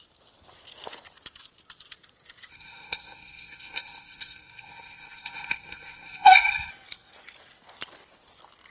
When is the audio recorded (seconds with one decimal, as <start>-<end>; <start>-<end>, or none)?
0.0-2.5; 6.7-8.7